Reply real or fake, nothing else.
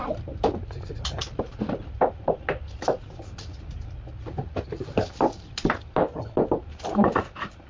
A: real